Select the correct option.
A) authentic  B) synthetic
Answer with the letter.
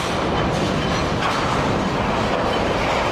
A